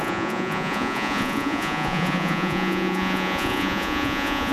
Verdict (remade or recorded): remade